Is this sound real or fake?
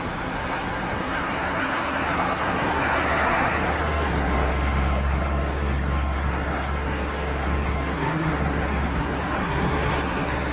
fake